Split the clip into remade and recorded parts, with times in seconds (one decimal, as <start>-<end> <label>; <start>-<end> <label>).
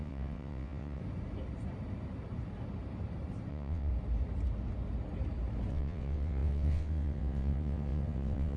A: 0.0-1.0 remade; 1.0-3.5 recorded; 3.5-3.9 remade; 3.9-5.7 recorded; 5.7-8.6 remade